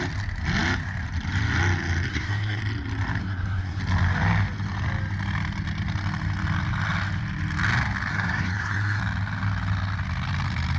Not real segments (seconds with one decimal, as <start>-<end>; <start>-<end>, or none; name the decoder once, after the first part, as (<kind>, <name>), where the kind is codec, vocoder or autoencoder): 2.1-2.6 (codec, SNAC); 3.2-3.8; 8.1-9.0